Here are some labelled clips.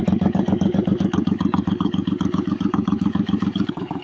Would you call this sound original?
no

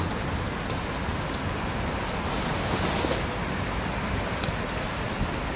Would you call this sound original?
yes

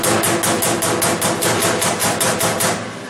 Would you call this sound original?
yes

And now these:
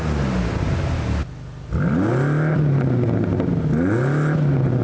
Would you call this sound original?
yes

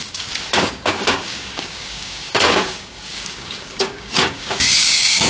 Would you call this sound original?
no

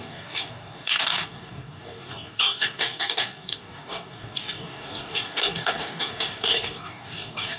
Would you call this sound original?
no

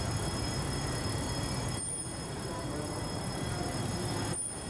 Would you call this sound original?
yes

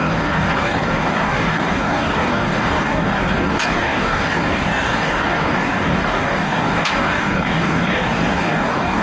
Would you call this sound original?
no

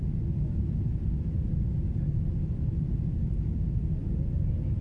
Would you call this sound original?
yes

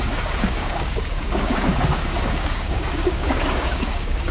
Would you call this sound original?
no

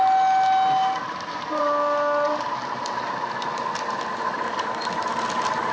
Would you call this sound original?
yes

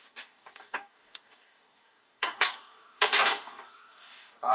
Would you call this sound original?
no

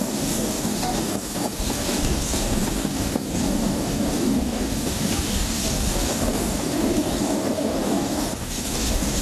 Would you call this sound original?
no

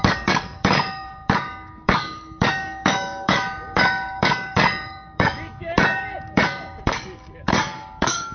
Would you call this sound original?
no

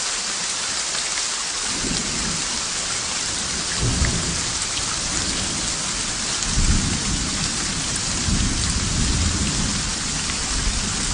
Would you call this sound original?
yes